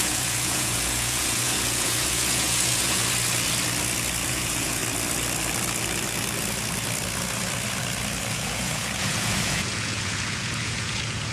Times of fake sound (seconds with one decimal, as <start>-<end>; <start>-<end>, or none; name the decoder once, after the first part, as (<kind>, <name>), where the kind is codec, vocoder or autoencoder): 0.0-3.0 (vocoder, Vocos); 4.3-4.8; 8.3-11.3